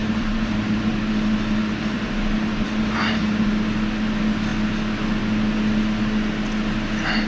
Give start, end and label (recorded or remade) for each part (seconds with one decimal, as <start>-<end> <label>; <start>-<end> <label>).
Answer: 0.0-0.9 remade; 0.9-1.6 recorded; 1.6-3.5 remade; 3.5-7.3 recorded